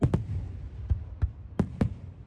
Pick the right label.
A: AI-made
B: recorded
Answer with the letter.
B